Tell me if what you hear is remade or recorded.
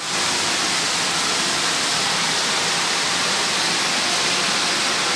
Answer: recorded